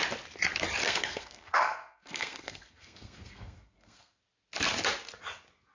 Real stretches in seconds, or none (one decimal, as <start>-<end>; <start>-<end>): 0.0-0.8; 4.2-5.7